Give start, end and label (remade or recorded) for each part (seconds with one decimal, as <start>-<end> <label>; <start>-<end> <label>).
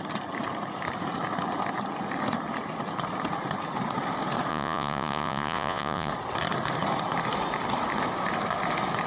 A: 0.0-4.5 recorded; 4.5-6.1 remade; 6.1-9.1 recorded